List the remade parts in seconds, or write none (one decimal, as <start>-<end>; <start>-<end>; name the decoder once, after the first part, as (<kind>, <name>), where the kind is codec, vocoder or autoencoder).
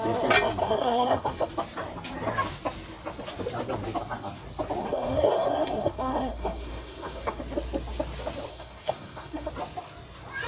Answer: 0.6-1.5 (codec, SNAC); 4.8-7.4; 8.5-9.5